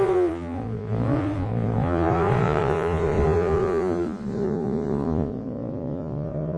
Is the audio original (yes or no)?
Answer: no